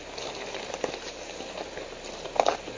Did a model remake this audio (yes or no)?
no